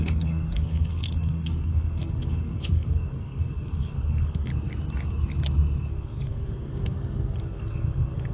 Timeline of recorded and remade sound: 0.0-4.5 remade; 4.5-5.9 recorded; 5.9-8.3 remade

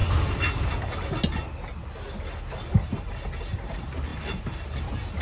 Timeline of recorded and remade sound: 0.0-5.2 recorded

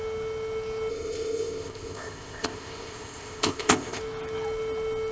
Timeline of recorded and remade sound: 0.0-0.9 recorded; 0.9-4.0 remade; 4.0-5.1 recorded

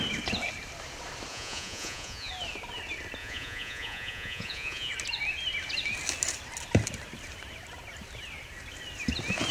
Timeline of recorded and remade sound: 0.0-1.3 recorded; 1.3-2.3 remade; 2.3-3.2 recorded; 3.2-4.9 remade; 4.9-9.5 recorded

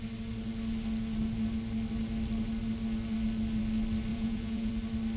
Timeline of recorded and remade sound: 0.0-4.1 recorded; 4.1-4.7 remade; 4.7-5.2 recorded